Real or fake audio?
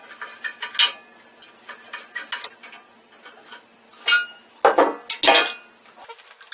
real